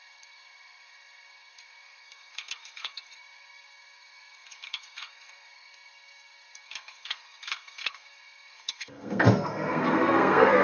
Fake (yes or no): yes